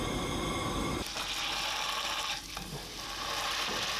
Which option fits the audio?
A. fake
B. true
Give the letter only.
B